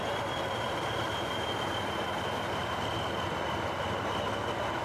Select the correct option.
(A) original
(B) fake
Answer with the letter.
A